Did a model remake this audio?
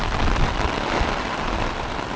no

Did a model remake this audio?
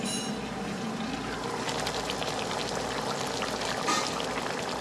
no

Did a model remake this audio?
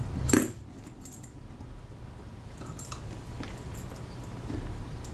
no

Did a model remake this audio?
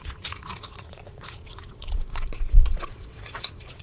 yes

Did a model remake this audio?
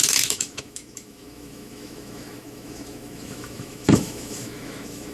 yes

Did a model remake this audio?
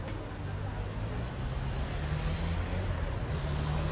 no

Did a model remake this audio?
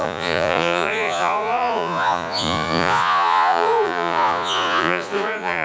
yes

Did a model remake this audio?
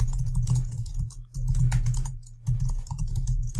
yes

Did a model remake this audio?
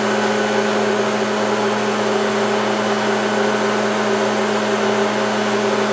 no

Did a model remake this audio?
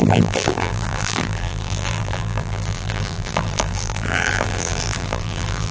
yes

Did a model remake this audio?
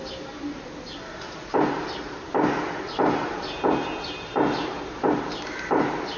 yes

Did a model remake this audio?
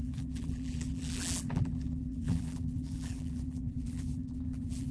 yes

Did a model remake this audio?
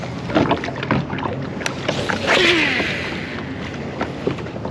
no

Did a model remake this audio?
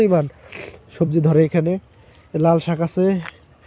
yes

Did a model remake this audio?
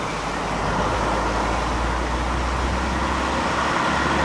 no